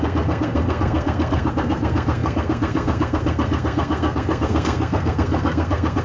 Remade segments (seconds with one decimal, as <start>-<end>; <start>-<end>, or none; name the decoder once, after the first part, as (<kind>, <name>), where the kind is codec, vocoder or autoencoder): 0.0-6.0 (codec, SNAC)